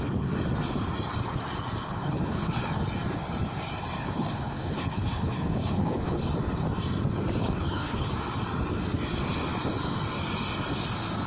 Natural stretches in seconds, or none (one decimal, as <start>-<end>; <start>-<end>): 0.0-1.8; 2.6-4.0; 6.2-7.4; 8.1-11.3